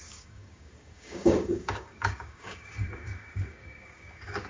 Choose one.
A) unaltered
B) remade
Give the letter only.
B